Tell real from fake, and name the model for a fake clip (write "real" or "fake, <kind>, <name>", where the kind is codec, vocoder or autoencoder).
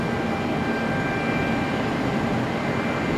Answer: real